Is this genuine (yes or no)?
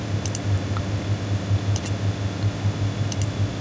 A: yes